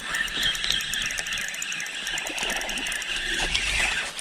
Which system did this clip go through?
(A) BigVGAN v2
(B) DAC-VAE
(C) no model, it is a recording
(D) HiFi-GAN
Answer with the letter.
C